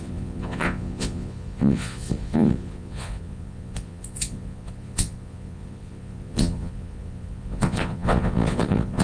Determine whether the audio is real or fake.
fake